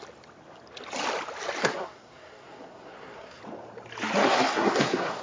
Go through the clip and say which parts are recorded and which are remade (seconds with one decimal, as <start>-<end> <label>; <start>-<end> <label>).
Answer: 0.0-1.6 recorded; 1.6-3.4 remade; 3.4-4.2 recorded; 4.2-5.2 remade